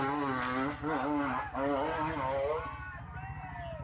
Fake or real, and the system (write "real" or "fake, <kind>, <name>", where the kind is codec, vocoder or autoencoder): real